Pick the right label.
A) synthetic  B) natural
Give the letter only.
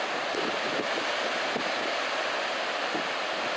B